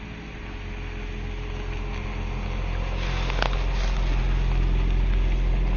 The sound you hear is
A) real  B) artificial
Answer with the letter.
A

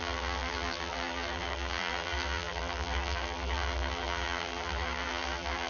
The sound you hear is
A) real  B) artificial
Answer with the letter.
B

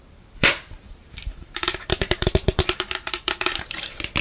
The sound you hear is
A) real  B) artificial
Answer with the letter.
B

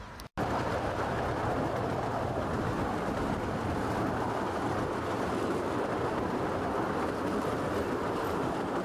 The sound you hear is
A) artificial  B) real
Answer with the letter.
B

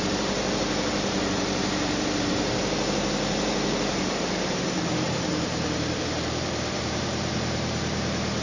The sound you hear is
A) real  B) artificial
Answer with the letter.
B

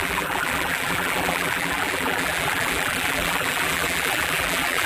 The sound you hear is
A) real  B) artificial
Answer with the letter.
B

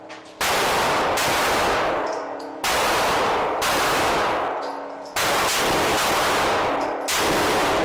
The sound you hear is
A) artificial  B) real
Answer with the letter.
B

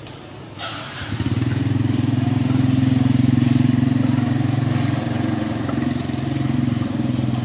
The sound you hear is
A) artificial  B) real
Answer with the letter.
A